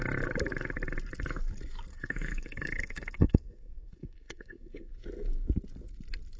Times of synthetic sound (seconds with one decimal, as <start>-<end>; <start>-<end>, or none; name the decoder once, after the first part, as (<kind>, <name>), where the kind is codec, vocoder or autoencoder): 1.9-4.9 (codec, SNAC)